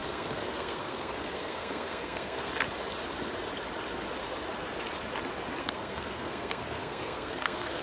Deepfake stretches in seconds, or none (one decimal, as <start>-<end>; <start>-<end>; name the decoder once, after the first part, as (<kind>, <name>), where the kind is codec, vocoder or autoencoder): 0.0-2.5 (codec, SNAC); 5.6-7.8